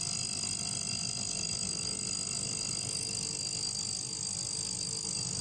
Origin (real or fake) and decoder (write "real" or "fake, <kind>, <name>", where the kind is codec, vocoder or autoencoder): real